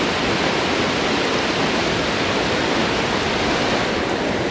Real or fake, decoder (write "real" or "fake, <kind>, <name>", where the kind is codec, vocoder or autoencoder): real